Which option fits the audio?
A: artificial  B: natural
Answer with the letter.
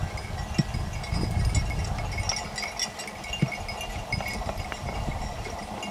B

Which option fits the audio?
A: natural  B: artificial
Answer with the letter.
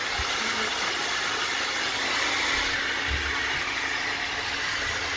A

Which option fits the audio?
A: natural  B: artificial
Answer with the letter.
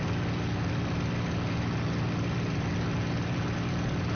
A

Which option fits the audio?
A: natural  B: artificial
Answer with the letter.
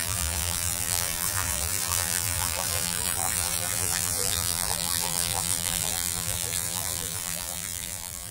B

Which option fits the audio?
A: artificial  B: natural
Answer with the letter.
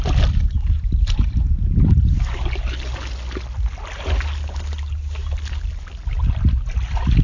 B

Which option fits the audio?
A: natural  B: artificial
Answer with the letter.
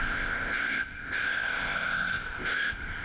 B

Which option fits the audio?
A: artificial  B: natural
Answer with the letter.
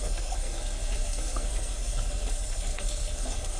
A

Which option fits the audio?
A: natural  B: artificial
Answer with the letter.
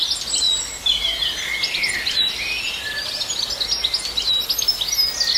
A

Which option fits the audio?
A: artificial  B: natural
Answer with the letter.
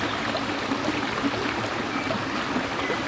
B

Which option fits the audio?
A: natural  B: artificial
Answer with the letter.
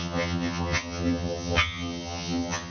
B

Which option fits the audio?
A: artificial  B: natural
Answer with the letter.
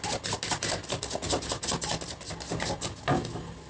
B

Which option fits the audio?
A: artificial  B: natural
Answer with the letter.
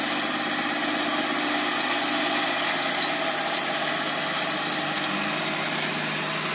B